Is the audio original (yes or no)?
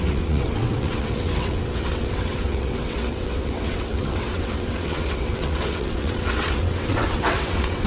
no